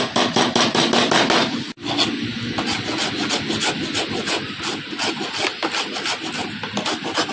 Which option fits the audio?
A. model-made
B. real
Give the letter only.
B